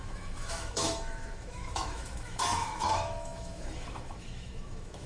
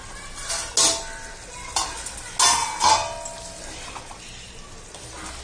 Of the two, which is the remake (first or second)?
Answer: first